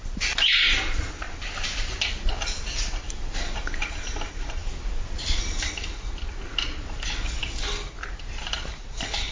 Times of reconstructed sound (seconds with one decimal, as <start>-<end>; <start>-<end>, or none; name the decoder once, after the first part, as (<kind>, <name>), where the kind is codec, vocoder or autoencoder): none